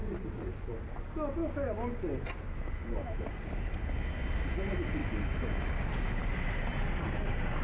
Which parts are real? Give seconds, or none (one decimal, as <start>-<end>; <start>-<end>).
0.0-7.6